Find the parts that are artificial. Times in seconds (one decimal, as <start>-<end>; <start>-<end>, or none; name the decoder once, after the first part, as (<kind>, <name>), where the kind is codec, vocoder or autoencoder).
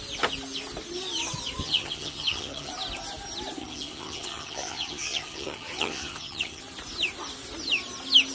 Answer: 1.6-2.7 (vocoder, HiFi-GAN); 3.6-6.6